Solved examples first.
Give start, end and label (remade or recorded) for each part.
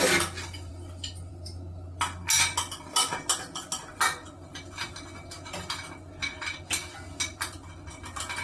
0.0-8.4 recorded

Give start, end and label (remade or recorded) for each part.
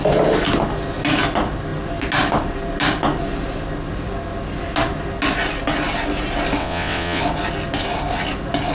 0.0-6.6 recorded; 6.6-7.2 remade; 7.2-8.7 recorded